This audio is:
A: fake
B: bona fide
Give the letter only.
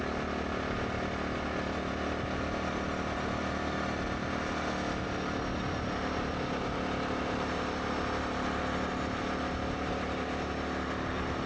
B